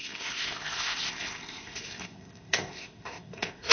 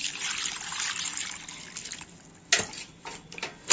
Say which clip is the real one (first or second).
second